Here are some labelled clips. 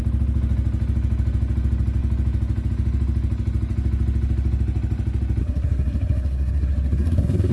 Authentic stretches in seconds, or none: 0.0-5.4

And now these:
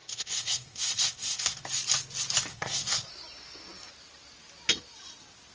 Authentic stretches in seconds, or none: 1.6-2.5; 3.1-5.5

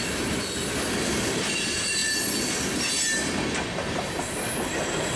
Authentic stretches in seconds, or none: 0.0-5.2